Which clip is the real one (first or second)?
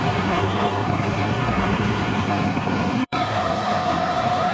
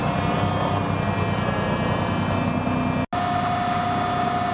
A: second